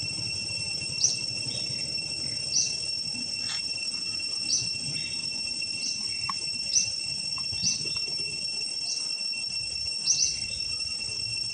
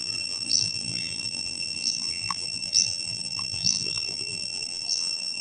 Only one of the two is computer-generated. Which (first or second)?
second